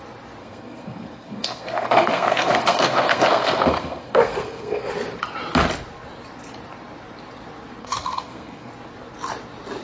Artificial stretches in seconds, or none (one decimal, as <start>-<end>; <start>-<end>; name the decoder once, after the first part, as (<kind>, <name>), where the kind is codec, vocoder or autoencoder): 0.4-4.9 (codec, SNAC); 7.8-8.7